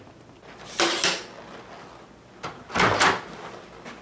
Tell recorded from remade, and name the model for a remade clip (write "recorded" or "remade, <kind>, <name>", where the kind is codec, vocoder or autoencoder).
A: recorded